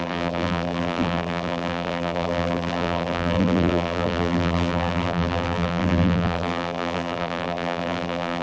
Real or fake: fake